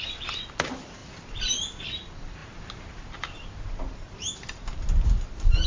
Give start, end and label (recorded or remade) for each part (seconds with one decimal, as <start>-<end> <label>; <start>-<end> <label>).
0.0-5.7 recorded